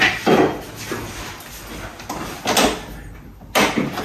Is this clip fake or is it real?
real